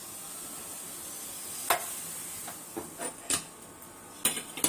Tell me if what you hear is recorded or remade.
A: recorded